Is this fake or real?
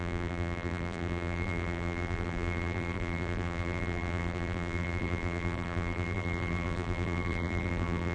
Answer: fake